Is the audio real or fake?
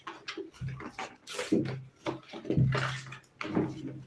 real